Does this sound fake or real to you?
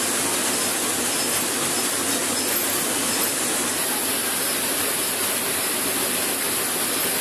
real